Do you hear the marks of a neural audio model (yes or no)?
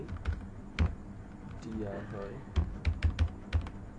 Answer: no